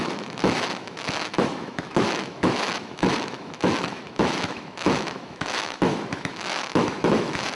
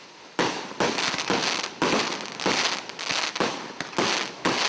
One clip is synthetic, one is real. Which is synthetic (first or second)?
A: first